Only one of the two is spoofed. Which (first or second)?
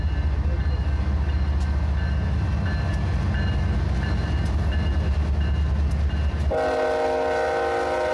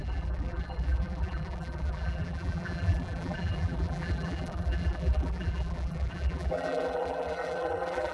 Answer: second